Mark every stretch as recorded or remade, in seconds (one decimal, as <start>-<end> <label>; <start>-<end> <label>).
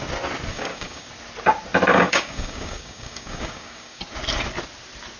0.0-0.5 recorded; 0.5-1.1 remade; 1.1-1.9 recorded; 1.9-4.0 remade; 4.0-5.2 recorded